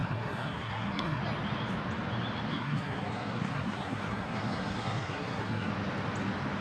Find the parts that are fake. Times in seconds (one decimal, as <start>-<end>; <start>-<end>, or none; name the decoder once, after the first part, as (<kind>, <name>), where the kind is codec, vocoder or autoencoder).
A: 0.0-1.2 (codec, SNAC); 2.5-5.7